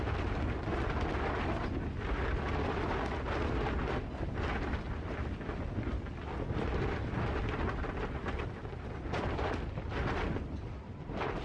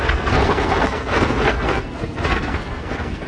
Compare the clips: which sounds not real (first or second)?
second